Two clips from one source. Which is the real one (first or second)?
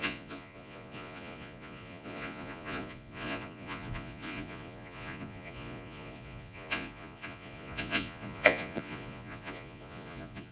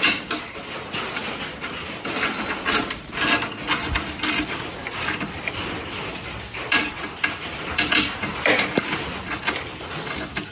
second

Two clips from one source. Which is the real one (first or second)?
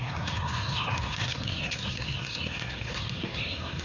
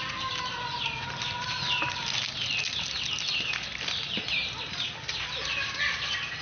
second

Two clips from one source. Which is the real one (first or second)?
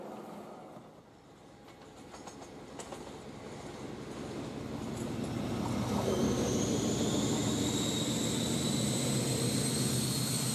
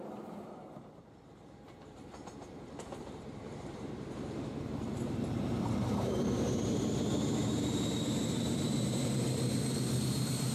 first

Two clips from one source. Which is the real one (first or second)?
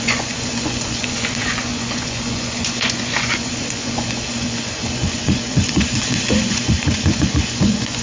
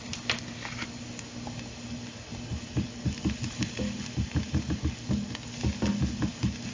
second